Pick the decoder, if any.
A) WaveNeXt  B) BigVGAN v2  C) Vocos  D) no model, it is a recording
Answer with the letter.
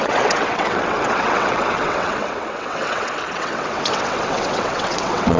A